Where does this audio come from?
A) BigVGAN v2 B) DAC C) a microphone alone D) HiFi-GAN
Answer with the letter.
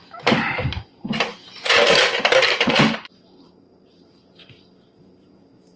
A